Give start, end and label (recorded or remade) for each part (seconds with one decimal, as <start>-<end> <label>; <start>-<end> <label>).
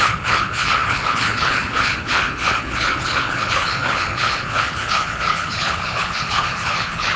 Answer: 0.0-7.2 remade